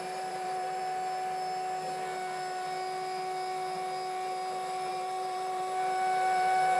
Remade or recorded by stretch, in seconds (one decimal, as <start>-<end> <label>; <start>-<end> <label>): 0.0-0.8 remade; 0.8-4.9 recorded; 4.9-6.8 remade